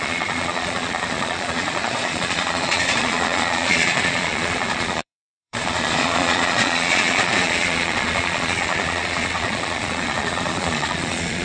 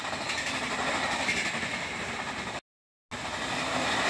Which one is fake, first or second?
first